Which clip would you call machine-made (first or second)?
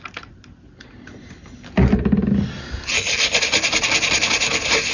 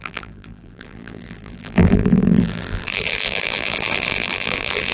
second